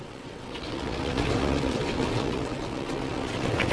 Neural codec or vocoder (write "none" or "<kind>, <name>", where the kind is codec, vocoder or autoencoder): vocoder, WaveNeXt